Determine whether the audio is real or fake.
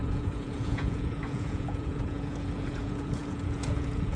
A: fake